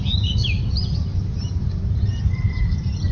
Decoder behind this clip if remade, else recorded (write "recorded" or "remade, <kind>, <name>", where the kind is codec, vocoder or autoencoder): recorded